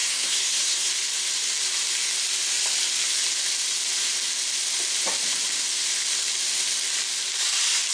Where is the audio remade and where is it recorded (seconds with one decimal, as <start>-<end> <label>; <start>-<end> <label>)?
0.0-0.9 remade; 0.9-7.9 recorded